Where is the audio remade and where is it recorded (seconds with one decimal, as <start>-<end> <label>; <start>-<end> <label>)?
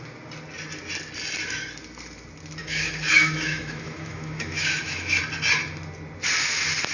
0.0-2.6 recorded; 2.6-5.2 remade; 5.2-6.9 recorded